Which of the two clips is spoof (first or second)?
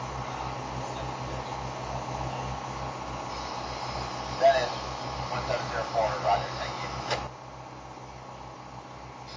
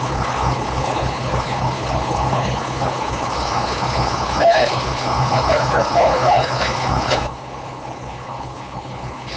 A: second